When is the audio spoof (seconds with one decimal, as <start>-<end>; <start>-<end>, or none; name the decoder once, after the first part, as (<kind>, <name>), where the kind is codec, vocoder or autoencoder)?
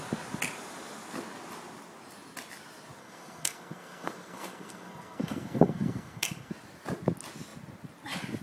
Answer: 3.0-6.5 (codec, SNAC)